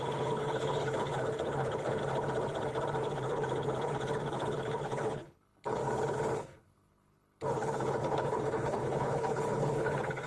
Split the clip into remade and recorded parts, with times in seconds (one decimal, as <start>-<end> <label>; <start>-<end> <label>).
0.0-2.0 remade; 2.0-3.0 recorded; 3.0-5.8 remade; 5.8-6.4 recorded; 6.4-10.3 remade